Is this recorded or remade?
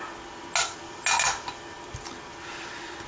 recorded